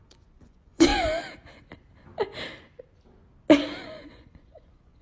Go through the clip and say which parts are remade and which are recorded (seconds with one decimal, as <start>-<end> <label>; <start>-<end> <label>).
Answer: 0.0-0.9 remade; 0.9-3.8 recorded; 3.8-5.0 remade